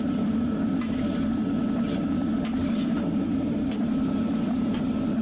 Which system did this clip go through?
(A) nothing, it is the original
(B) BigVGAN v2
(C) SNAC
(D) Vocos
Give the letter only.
B